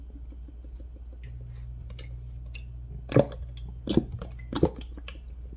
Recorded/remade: recorded